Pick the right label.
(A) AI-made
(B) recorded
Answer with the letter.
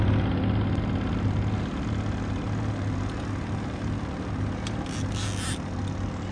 B